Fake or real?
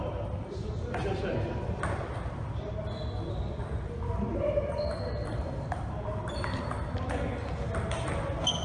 real